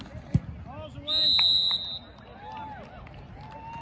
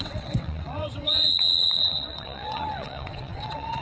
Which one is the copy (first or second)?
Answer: second